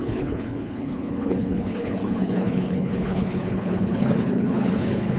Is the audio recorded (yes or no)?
no